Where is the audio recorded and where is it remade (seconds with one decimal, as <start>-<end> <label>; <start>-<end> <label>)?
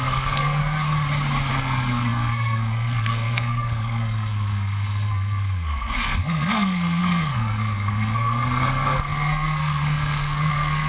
0.0-0.6 remade; 0.6-1.5 recorded; 1.5-10.9 remade